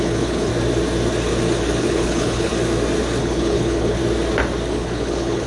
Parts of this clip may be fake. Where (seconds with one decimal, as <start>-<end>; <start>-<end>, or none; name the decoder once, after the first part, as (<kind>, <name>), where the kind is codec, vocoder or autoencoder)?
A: 0.0-0.5 (codec, HILCodec); 1.8-2.5; 3.2-4.0; 4.7-5.5